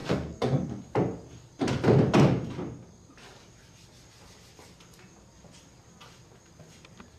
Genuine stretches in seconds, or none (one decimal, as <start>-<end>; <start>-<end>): 0.8-7.2